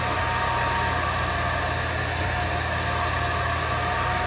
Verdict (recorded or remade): recorded